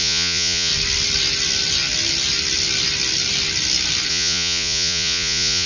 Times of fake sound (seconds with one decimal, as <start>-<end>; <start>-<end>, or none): 0.0-0.7; 4.1-5.7